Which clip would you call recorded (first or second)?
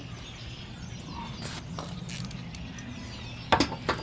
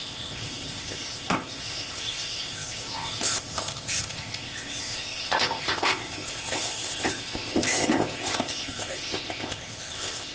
first